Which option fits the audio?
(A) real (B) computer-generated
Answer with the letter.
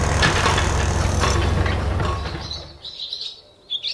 A